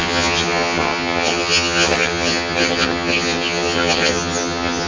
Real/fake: fake